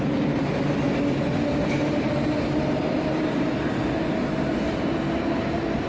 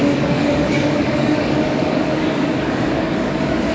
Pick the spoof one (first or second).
second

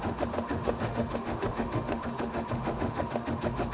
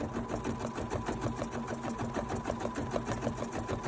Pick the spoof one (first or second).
first